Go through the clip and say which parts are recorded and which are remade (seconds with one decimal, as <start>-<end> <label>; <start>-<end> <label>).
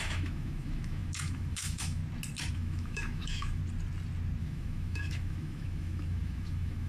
0.0-2.0 remade; 2.0-2.5 recorded; 2.5-3.6 remade; 3.6-4.4 recorded; 4.4-6.9 remade